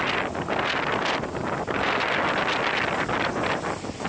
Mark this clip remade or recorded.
recorded